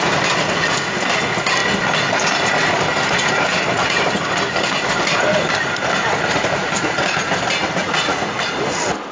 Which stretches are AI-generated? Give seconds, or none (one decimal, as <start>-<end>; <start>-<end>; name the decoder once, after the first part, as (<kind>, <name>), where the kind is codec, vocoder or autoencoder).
7.8-8.5 (vocoder, Vocos)